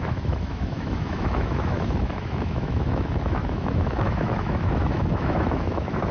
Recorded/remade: remade